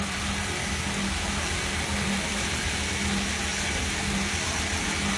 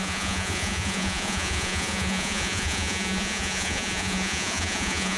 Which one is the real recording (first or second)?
first